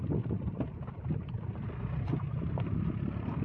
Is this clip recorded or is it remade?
recorded